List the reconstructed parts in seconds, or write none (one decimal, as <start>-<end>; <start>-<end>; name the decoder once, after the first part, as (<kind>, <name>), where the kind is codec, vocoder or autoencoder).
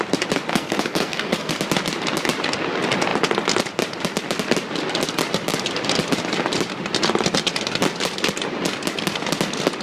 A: 0.5-1.6 (codec, SNAC)